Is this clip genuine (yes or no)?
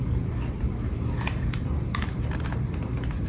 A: no